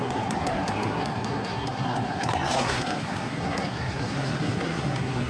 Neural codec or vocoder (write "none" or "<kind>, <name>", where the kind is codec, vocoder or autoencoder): codec, SNAC